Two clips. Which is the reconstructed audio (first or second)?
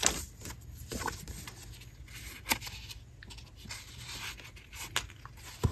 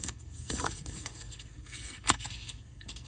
second